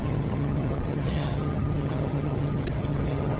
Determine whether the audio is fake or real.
fake